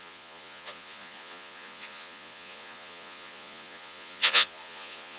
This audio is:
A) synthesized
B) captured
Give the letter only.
A